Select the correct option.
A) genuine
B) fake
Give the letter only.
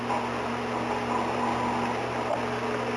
A